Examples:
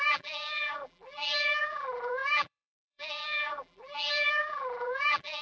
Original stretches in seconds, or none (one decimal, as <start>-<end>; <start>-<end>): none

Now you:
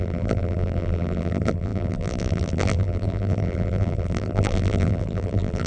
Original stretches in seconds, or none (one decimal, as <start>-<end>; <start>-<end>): none

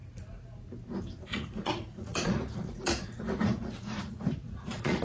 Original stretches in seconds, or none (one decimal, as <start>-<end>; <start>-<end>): 0.0-1.3